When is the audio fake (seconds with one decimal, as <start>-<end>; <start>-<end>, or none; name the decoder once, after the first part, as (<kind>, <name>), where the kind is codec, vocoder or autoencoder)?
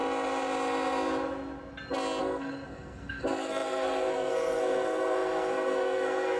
2.2-6.4 (codec, SNAC)